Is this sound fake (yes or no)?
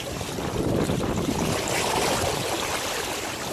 no